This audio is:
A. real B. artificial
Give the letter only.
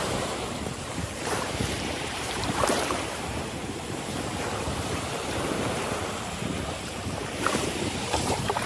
B